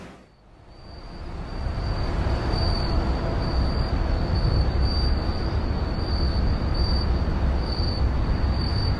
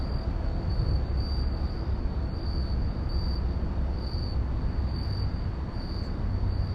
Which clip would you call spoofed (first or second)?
first